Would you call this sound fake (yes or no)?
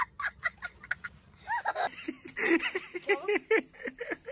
no